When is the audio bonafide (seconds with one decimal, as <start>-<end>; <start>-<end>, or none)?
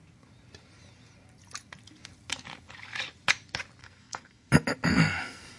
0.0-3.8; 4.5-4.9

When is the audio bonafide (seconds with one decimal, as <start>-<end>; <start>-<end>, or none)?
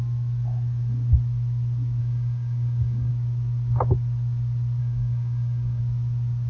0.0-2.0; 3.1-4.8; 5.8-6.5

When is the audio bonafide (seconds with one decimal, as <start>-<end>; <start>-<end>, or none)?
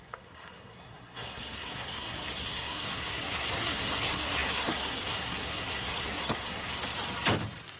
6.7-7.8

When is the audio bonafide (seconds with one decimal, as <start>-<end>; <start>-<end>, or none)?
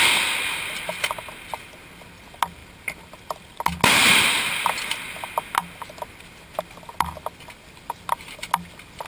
0.0-9.1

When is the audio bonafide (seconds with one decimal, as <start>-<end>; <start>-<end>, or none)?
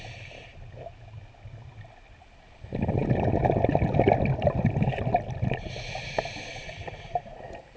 0.0-7.8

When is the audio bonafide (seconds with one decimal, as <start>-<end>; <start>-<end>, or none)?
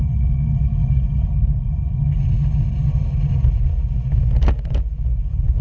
0.0-3.3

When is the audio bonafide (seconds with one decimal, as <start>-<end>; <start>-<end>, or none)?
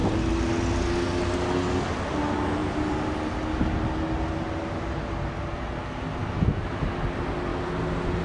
0.0-8.2